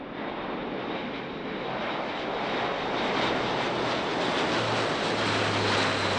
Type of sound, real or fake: real